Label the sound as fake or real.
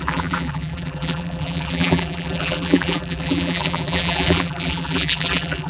fake